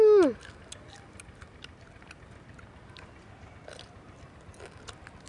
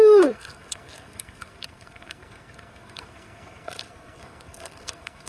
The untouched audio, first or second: first